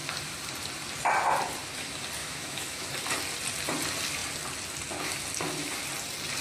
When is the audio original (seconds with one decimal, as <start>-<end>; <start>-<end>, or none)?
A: 0.0-2.2; 2.9-6.4